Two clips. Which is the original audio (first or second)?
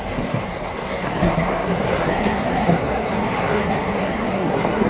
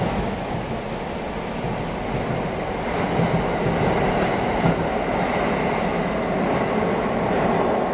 second